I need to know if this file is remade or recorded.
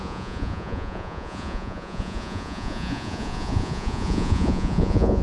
remade